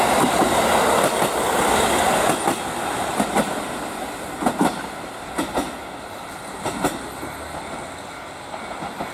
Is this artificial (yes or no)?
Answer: no